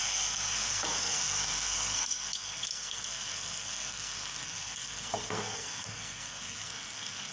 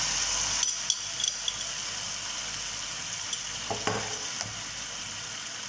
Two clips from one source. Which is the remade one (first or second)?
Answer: first